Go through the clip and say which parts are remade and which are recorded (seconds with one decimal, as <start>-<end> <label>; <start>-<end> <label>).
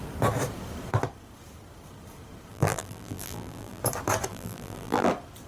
0.0-2.5 recorded; 2.5-3.8 remade; 3.8-4.3 recorded; 4.3-5.1 remade; 5.1-5.5 recorded